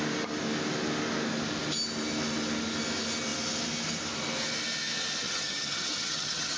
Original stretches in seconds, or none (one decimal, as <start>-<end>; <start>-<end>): 0.0-5.2